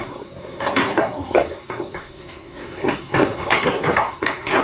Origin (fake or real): fake